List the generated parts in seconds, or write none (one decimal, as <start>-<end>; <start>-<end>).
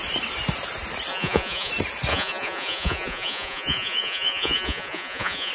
1.1-1.7; 2.1-5.5